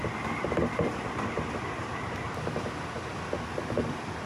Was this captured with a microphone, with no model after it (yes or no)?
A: yes